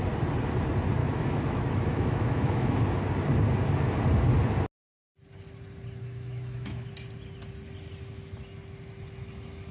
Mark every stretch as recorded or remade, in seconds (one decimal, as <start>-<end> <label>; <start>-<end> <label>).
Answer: 0.0-1.0 recorded; 1.0-2.8 remade; 2.8-6.0 recorded; 6.0-6.9 remade; 6.9-9.7 recorded

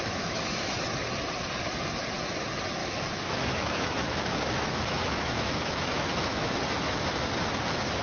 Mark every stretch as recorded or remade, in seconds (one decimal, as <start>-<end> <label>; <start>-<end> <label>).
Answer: 0.0-0.8 remade; 0.8-2.8 recorded; 2.8-6.5 remade; 6.5-8.0 recorded

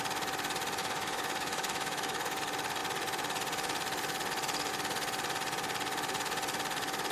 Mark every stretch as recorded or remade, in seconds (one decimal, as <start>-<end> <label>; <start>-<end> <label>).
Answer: 0.0-0.8 recorded; 0.8-2.4 remade; 2.4-7.1 recorded

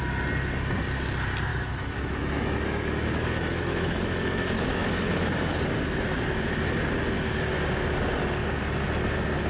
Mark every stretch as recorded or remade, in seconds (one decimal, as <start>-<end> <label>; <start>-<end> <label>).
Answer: 0.0-1.5 recorded; 1.5-5.3 remade; 5.3-9.5 recorded

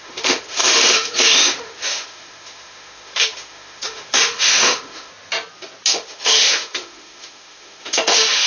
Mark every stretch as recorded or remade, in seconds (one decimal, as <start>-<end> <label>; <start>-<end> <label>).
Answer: 0.0-5.1 remade; 5.1-5.9 recorded; 5.9-8.5 remade

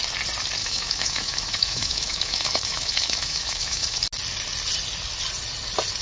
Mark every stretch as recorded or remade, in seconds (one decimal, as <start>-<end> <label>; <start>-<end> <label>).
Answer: 0.0-0.6 recorded; 0.6-4.0 remade; 4.0-6.0 recorded